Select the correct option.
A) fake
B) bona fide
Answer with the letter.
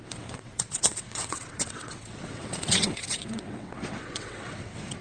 A